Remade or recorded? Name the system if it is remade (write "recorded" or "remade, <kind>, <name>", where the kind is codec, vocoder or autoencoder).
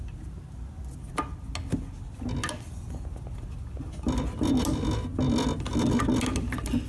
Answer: recorded